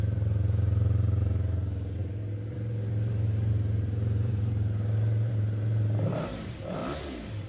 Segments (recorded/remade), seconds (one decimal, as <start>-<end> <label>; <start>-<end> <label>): 0.0-6.8 remade; 6.8-7.5 recorded